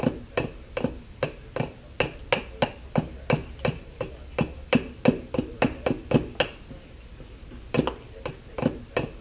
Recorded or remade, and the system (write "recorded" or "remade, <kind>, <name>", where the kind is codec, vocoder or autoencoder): recorded